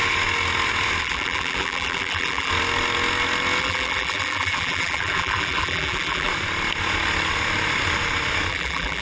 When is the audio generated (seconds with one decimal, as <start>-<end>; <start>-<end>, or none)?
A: 1.0-2.5; 3.6-6.3; 8.5-9.0